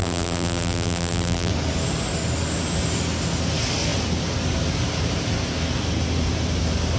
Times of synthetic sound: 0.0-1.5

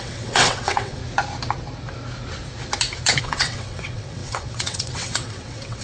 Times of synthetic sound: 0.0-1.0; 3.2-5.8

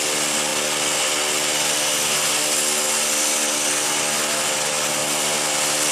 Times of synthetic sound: none

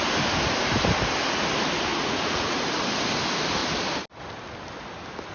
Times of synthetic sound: 1.9-2.7

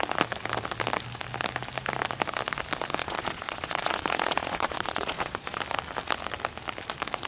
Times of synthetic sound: 3.0-5.6

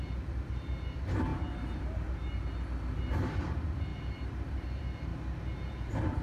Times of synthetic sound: 0.0-1.3; 3.1-5.1; 5.7-6.2

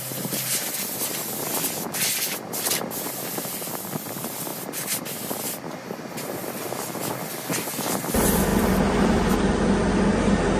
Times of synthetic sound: none